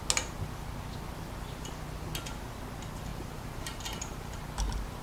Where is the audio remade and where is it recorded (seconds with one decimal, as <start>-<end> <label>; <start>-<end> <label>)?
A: 0.0-3.1 recorded; 3.1-4.4 remade; 4.4-5.0 recorded